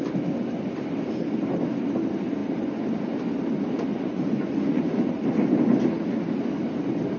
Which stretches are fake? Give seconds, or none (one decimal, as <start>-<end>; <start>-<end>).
3.9-5.1